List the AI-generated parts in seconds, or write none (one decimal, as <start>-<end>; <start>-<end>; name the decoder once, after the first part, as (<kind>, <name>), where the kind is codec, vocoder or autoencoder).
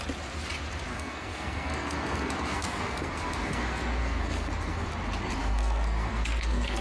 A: 0.9-4.9 (codec, SNAC); 5.4-6.8